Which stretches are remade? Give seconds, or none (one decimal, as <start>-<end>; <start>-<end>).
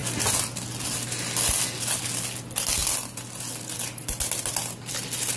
none